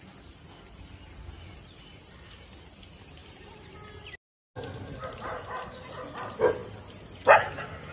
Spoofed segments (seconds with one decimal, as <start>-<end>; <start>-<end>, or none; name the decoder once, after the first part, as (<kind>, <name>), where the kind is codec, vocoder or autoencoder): 3.2-3.7 (vocoder, BigVGAN v2)